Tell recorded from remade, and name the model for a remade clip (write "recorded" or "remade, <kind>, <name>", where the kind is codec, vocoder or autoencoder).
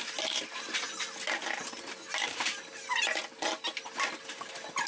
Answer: recorded